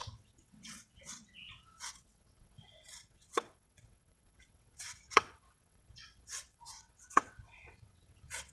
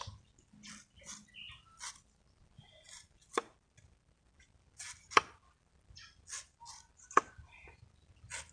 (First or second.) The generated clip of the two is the first